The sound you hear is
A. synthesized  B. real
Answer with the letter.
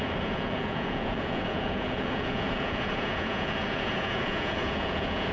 A